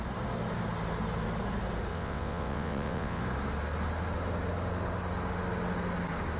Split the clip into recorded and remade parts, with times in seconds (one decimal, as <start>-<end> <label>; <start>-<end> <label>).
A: 0.0-1.9 recorded; 1.9-3.2 remade; 3.2-6.4 recorded